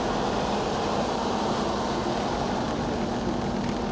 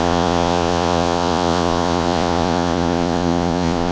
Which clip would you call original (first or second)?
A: first